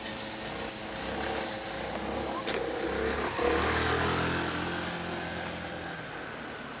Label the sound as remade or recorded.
recorded